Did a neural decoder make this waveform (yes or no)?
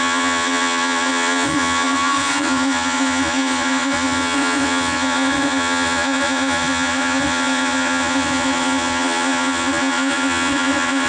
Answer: yes